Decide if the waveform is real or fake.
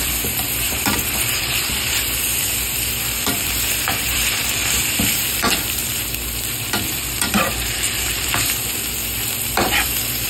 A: fake